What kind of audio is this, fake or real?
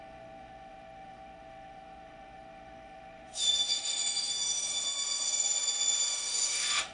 fake